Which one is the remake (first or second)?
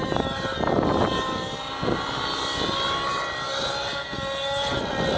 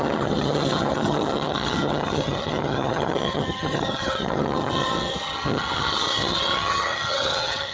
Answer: second